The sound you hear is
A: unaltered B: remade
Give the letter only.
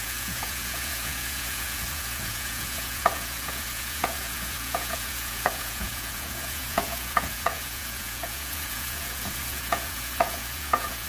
B